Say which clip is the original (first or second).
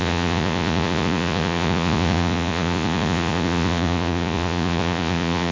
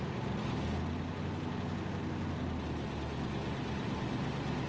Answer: second